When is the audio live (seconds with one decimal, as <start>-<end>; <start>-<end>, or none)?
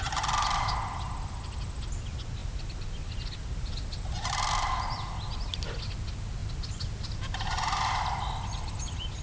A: 0.0-9.2